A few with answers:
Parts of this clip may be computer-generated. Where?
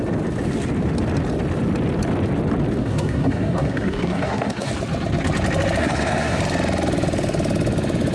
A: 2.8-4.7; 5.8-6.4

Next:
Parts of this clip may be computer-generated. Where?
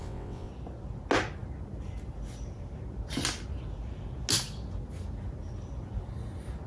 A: 0.0-0.5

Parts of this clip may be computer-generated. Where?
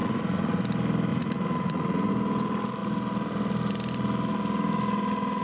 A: 0.0-0.6; 1.1-2.1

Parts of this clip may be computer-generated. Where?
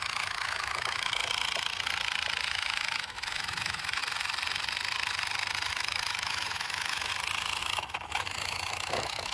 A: 0.0-1.2; 2.5-4.0; 5.7-7.1; 7.6-9.3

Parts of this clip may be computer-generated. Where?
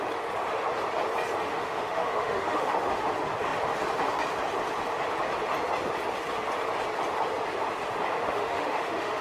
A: 1.5-3.1; 8.1-9.2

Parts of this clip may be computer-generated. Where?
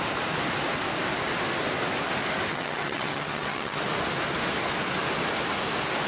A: 2.5-3.8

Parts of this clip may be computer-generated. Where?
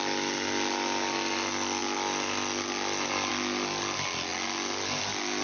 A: none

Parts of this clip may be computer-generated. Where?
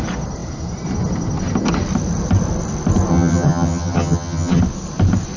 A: 3.1-4.6